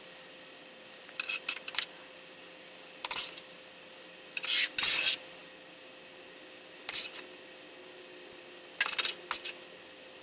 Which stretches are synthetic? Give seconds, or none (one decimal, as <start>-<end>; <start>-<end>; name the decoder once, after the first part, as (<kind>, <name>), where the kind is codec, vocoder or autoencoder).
none